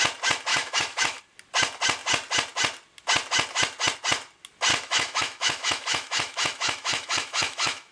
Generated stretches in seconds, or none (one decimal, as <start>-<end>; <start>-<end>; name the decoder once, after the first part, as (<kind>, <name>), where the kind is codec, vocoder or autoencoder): 0.5-1.2 (autoencoder, DAC-VAE); 4.7-7.9